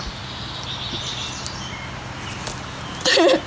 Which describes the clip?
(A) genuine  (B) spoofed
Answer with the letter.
A